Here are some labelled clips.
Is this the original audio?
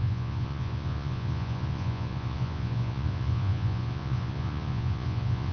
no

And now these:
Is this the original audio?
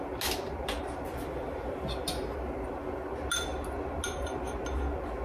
yes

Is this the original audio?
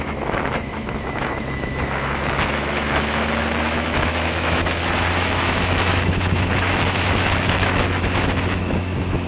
no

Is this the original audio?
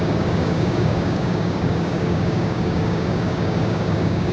no